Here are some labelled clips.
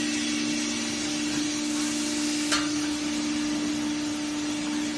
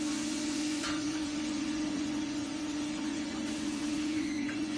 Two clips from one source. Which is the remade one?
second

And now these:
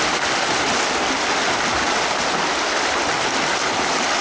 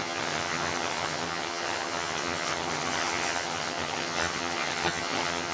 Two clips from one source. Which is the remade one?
second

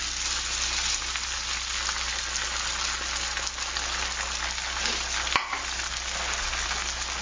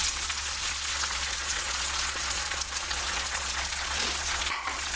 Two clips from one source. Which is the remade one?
second